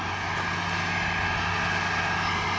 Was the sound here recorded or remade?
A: recorded